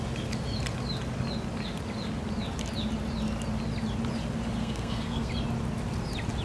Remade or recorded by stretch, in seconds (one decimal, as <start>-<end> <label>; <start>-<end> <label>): 0.0-4.6 recorded; 4.6-5.3 remade; 5.3-6.4 recorded